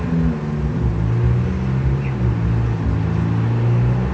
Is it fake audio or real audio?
real